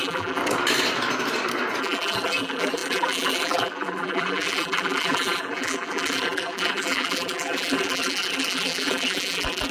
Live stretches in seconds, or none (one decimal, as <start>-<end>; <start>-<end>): 0.4-1.8